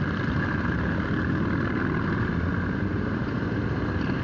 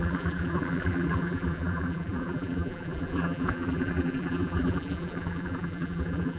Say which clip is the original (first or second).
first